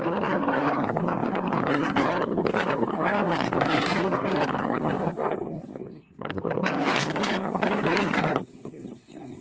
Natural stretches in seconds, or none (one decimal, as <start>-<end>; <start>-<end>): none